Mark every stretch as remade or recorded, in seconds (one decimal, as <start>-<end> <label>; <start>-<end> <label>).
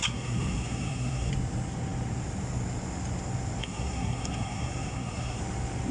0.0-1.3 remade; 1.3-3.6 recorded; 3.6-5.4 remade; 5.4-5.9 recorded